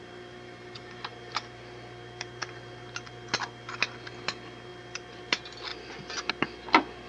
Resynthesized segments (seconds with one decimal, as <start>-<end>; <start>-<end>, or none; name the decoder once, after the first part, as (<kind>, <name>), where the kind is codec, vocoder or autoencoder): 0.0-5.7 (vocoder, BigVGAN v2); 6.3-7.1